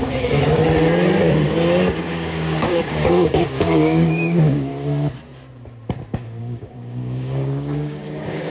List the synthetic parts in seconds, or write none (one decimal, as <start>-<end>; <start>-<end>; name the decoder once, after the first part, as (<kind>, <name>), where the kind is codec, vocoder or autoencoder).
0.0-0.6 (codec, DAC); 2.0-4.7; 6.4-8.5